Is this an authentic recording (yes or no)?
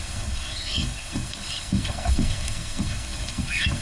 no